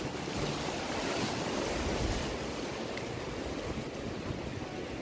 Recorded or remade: recorded